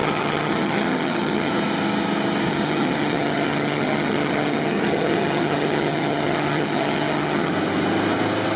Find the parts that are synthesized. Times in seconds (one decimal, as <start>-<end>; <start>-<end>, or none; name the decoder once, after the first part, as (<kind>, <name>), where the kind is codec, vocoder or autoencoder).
0.0-1.5 (vocoder, HiFi-GAN); 2.5-7.5